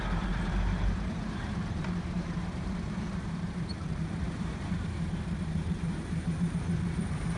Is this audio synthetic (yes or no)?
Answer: yes